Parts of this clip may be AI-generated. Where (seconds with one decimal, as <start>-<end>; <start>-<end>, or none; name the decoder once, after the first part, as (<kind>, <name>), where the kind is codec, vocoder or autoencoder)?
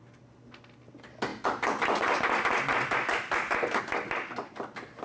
none